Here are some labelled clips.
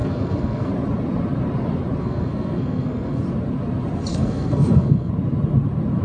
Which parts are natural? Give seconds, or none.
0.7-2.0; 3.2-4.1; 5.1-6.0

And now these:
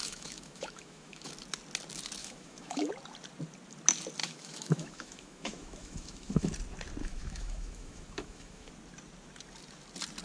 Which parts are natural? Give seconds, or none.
1.3-2.2; 2.9-4.2; 6.5-7.0; 8.7-10.2

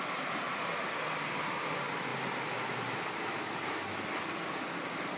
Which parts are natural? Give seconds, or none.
0.0-5.2